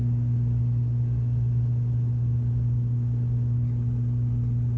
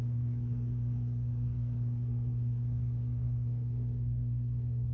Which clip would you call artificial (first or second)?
second